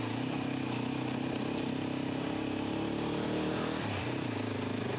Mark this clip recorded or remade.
recorded